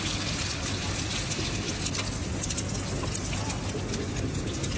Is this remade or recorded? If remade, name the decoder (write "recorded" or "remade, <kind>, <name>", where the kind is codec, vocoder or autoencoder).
recorded